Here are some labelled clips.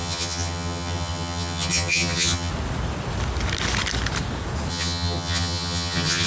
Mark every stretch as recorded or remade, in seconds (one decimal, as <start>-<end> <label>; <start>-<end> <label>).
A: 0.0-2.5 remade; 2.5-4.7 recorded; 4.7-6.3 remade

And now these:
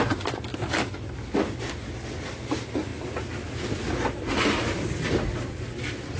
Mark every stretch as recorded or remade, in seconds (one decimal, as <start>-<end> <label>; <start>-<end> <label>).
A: 0.0-6.2 recorded

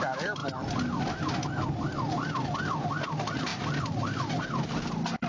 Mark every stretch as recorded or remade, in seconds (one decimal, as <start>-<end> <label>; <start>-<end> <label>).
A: 0.0-5.3 recorded

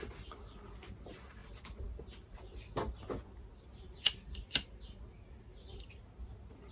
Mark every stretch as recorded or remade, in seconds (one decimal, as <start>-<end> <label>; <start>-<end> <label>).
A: 0.0-6.7 recorded